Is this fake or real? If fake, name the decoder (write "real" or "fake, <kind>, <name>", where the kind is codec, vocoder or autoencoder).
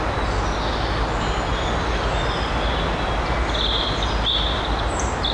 real